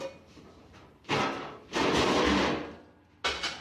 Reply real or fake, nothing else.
real